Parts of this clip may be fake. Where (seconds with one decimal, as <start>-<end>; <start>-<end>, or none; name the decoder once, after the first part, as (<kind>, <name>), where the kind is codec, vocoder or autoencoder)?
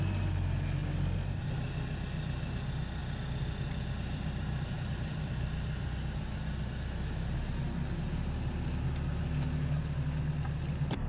none